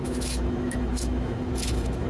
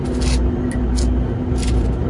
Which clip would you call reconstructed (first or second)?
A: first